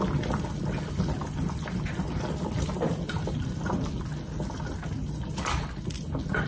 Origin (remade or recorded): recorded